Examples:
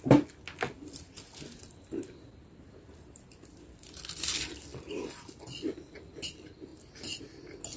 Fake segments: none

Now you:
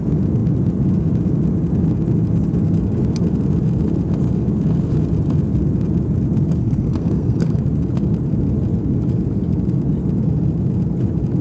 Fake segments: 6.6-7.6 (codec, SNAC)

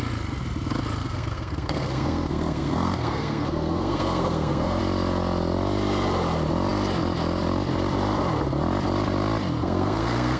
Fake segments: 1.0-4.8 (codec, SNAC); 9.6-10.4

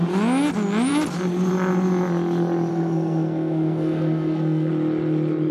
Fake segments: 2.7-4.7 (codec, SNAC)

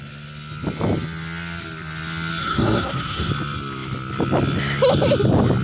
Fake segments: 2.4-3.3 (codec, SNAC)

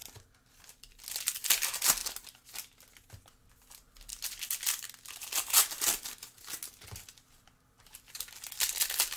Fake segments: none

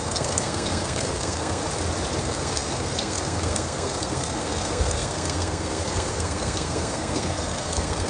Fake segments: 0.0-1.6 (codec, SNAC); 2.2-8.1

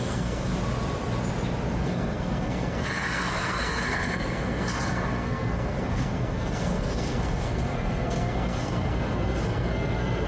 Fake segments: 0.0-0.5 (codec, SNAC); 1.8-10.3